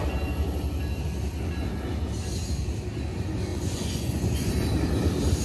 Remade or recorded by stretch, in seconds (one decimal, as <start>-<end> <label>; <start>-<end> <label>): 0.0-3.5 recorded; 3.5-4.5 remade; 4.5-5.4 recorded

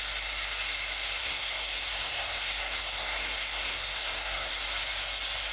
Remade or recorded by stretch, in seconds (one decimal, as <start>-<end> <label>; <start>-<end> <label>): 0.0-1.2 recorded; 1.2-4.5 remade; 4.5-5.5 recorded

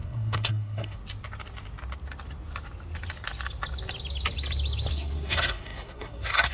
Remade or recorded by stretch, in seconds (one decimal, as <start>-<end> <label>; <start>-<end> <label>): 0.0-1.0 remade; 1.0-4.9 recorded; 4.9-6.5 remade

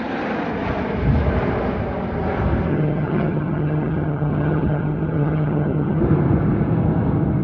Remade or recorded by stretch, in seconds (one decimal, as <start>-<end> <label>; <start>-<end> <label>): 0.0-2.7 recorded; 2.7-6.0 remade; 6.0-7.4 recorded

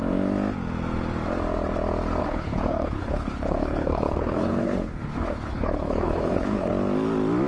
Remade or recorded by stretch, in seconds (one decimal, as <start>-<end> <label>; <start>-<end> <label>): 0.0-2.2 recorded; 2.2-6.7 remade; 6.7-7.5 recorded

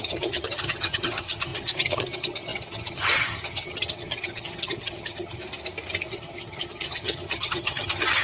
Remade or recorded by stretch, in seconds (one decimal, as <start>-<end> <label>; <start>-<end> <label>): 0.0-5.4 remade; 5.4-6.1 recorded; 6.1-8.2 remade